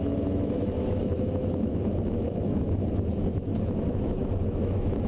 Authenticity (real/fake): fake